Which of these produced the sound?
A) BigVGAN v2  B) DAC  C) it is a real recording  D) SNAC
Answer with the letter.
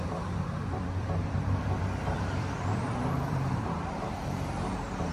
A